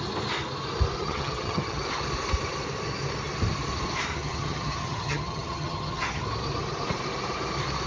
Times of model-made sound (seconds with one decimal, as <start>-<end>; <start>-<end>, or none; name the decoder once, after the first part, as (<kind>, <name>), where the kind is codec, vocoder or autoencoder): 1.0-1.8 (vocoder, HiFi-GAN); 4.1-6.2